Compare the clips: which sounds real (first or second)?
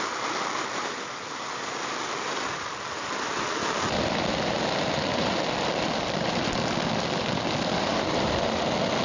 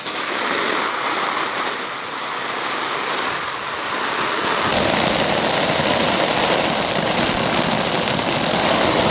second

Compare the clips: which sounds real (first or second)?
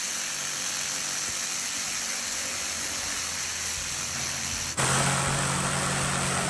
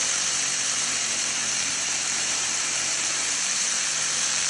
first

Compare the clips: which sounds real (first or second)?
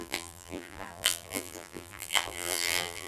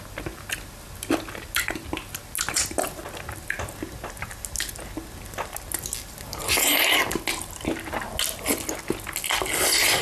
second